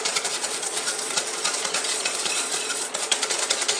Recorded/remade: remade